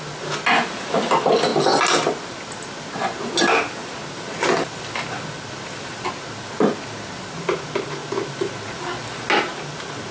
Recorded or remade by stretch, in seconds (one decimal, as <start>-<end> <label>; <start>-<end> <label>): 0.0-10.1 recorded